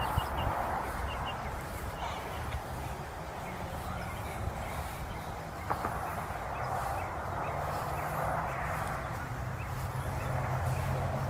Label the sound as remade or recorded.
recorded